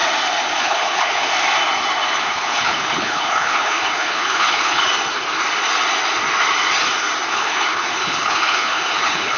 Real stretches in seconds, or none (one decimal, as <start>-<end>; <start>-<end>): 0.0-0.6; 1.3-2.2; 4.8-7.3